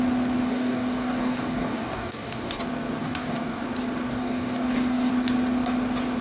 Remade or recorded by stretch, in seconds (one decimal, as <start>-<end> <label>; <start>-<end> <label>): 0.0-0.5 recorded; 0.5-2.6 remade; 2.6-3.0 recorded; 3.0-3.6 remade; 3.6-4.1 recorded; 4.1-5.1 remade; 5.1-6.2 recorded